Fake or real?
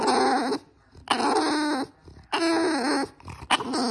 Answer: real